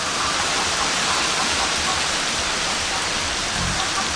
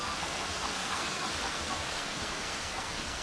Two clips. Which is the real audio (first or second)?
first